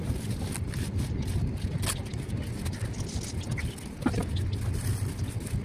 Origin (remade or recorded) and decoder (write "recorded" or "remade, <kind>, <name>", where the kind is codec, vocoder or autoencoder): recorded